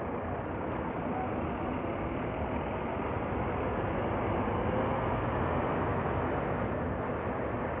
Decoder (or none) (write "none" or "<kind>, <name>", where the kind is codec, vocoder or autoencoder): none